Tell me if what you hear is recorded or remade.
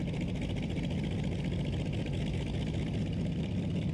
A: remade